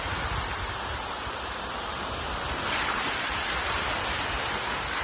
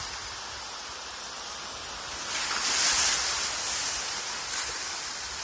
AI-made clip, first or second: first